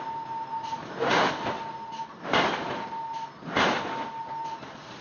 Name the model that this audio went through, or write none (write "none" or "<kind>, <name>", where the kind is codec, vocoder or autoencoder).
none